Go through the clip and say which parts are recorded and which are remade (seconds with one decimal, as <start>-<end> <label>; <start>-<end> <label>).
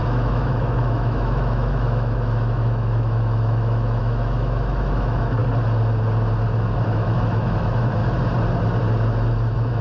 0.0-5.4 remade; 5.4-6.9 recorded; 6.9-8.0 remade; 8.0-9.3 recorded; 9.3-9.8 remade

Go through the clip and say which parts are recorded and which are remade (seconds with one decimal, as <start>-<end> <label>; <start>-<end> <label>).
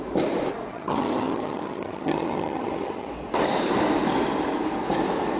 0.0-0.7 recorded; 0.7-3.1 remade; 3.1-5.4 recorded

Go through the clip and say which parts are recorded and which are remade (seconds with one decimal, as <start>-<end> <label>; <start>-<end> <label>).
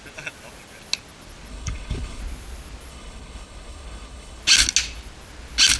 0.0-1.5 recorded; 1.5-2.2 remade; 2.2-2.9 recorded; 2.9-4.4 remade; 4.4-5.8 recorded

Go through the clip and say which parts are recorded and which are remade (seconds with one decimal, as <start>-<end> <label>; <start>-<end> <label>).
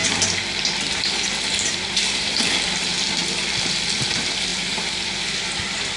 0.0-1.7 recorded; 1.7-6.0 remade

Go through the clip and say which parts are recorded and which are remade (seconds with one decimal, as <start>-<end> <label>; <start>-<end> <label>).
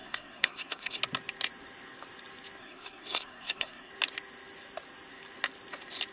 0.0-1.0 remade; 1.0-2.6 recorded; 2.6-3.9 remade; 3.9-6.1 recorded